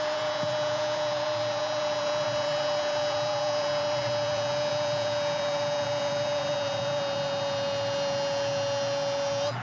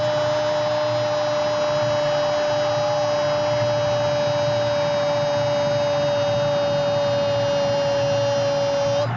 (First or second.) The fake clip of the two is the first